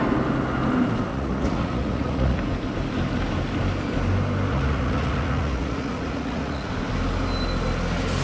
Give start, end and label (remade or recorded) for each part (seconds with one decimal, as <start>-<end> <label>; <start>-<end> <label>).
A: 0.0-1.1 recorded; 1.1-2.4 remade; 2.4-4.5 recorded; 4.5-6.7 remade; 6.7-8.2 recorded